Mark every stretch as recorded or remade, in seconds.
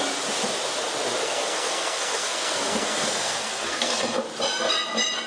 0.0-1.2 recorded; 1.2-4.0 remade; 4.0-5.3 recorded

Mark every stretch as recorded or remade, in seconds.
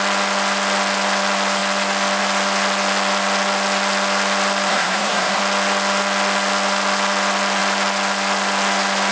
0.0-4.7 recorded; 4.7-5.4 remade; 5.4-9.1 recorded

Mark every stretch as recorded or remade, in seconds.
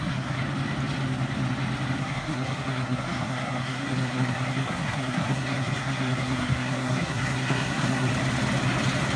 0.0-0.4 remade; 0.4-2.0 recorded; 2.0-8.1 remade; 8.1-9.2 recorded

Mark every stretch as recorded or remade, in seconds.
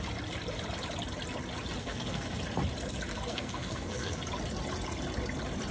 0.0-1.8 recorded; 1.8-2.4 remade; 2.4-3.1 recorded; 3.1-4.2 remade; 4.2-5.7 recorded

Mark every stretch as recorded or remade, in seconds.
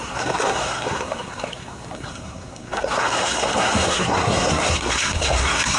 0.0-5.8 remade